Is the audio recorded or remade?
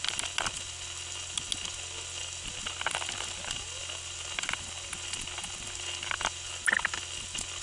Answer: recorded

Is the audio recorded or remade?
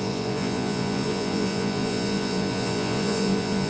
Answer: remade